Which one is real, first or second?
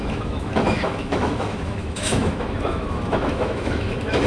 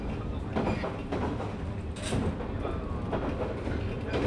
second